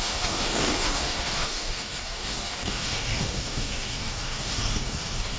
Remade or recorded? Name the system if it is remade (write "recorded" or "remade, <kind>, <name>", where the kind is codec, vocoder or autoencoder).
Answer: remade, codec, DAC